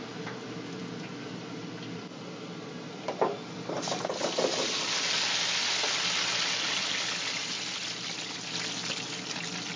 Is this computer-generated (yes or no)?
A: no